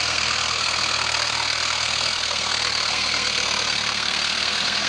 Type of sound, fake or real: fake